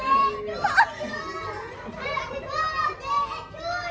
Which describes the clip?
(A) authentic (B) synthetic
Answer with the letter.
A